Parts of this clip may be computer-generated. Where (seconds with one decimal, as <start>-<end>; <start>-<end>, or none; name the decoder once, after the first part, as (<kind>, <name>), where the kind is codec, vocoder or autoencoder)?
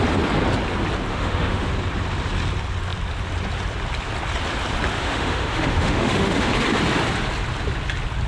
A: 1.1-1.7 (autoencoder, DAC-VAE); 5.0-6.5